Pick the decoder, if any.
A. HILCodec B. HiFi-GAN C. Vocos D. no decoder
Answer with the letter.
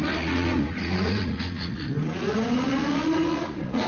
C